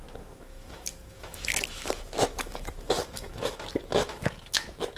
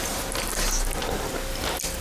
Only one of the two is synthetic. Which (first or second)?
first